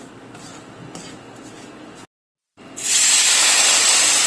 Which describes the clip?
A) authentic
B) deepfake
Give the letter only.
A